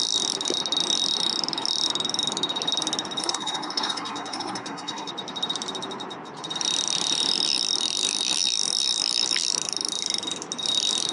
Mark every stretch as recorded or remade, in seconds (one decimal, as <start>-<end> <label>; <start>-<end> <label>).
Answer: 0.0-3.2 recorded; 3.2-5.1 remade; 5.1-11.1 recorded